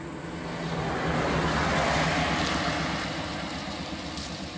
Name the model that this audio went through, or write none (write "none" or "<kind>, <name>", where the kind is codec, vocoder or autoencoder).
none